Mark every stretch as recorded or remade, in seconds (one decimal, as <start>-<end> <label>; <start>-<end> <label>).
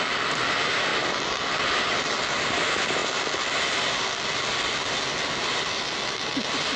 0.0-0.9 recorded; 0.9-1.9 remade; 1.9-6.8 recorded